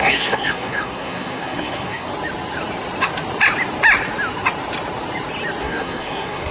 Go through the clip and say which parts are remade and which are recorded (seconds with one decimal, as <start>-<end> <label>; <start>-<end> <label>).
0.0-2.1 remade; 2.1-5.6 recorded; 5.6-6.5 remade